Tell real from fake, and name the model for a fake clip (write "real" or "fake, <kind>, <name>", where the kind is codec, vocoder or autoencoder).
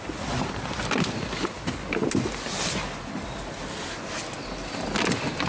real